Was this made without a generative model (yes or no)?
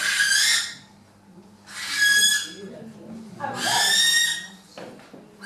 yes